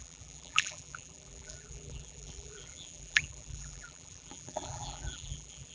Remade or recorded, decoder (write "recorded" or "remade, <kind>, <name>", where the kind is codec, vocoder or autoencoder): remade, vocoder, BigVGAN v2